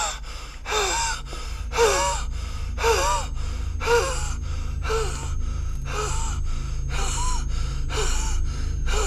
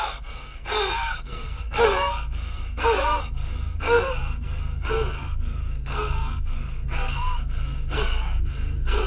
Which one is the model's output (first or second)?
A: second